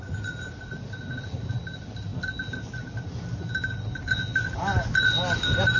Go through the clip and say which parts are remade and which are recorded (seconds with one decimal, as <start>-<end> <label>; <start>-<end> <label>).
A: 0.0-5.8 recorded